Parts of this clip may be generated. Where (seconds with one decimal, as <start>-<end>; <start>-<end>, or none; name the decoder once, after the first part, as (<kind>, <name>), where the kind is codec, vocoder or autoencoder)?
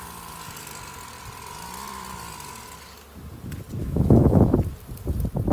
3.8-4.4 (autoencoder, DAC-VAE)